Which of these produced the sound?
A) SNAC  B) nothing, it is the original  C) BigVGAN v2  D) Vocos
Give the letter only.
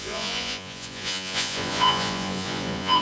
D